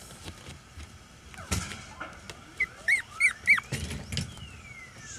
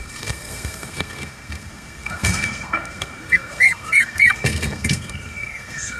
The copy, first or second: second